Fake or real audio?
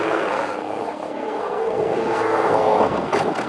fake